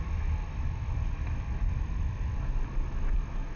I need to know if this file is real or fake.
real